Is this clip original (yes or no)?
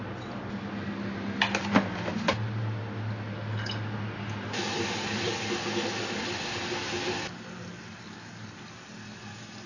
yes